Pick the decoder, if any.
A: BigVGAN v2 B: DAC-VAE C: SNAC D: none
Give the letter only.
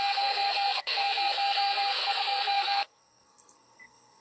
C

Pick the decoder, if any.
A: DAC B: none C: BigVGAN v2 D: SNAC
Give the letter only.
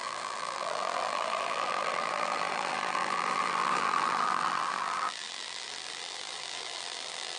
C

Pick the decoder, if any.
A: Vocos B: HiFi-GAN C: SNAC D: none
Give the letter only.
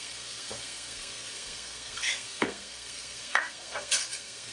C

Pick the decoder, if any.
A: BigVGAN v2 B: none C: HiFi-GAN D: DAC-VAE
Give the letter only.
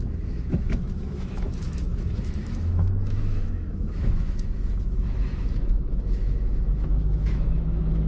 D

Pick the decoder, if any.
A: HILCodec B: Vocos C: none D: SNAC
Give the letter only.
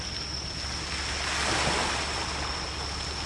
C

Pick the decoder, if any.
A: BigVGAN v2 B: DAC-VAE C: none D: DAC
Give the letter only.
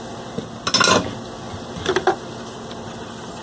C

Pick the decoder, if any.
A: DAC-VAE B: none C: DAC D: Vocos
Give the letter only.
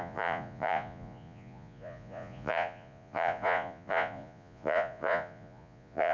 D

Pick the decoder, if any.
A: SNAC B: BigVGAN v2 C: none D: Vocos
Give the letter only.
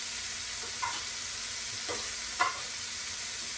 C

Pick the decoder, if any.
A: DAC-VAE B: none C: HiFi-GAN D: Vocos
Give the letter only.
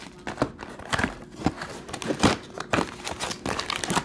B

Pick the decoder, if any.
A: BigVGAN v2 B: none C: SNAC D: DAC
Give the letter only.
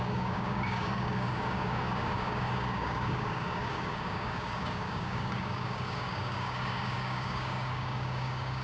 D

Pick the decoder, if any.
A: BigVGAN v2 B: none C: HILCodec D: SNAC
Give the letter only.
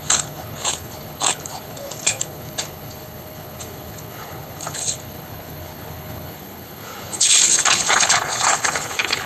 C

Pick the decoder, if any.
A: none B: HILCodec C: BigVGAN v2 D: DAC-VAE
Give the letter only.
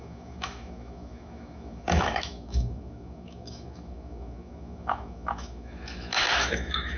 D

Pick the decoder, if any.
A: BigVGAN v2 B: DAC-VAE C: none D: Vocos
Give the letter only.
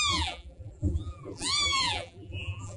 A